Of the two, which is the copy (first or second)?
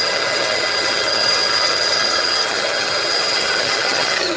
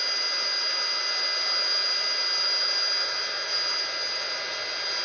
first